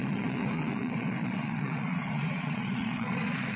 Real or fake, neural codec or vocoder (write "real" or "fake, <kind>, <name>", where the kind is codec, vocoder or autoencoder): fake, vocoder, Vocos